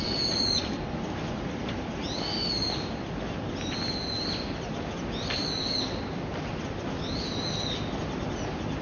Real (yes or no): yes